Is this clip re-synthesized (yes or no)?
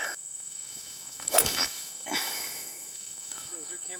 yes